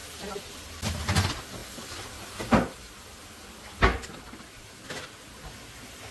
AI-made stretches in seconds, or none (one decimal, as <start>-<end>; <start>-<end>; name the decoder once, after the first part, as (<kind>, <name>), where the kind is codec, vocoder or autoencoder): none